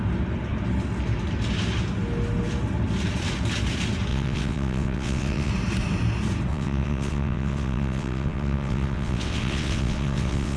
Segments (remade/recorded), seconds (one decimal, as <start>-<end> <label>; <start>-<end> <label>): 0.0-4.1 recorded; 4.1-5.5 remade; 5.5-6.5 recorded; 6.5-10.6 remade